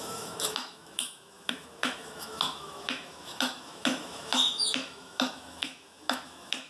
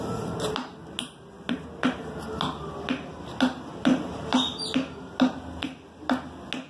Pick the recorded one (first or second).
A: second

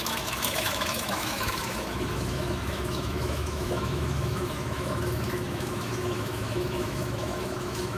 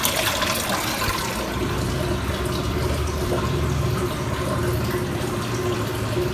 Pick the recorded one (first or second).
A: second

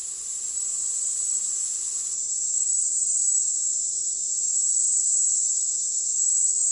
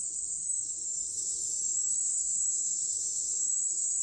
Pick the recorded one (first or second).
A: first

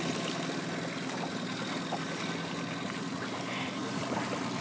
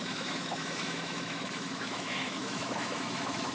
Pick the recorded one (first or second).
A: first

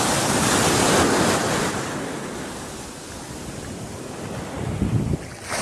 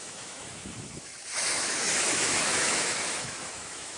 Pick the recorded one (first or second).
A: first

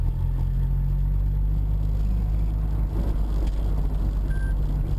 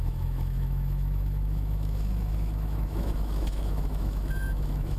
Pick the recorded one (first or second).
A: first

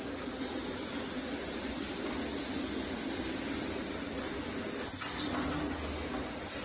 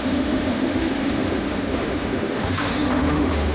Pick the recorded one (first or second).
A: first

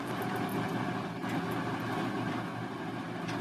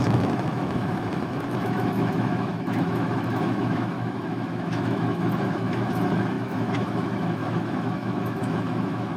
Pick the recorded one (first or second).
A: first